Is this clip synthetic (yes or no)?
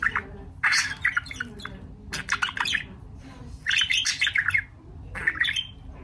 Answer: no